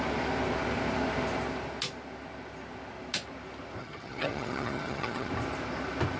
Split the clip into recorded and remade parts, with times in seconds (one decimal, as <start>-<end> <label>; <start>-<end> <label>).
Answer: 0.0-3.8 recorded; 3.8-5.3 remade; 5.3-6.2 recorded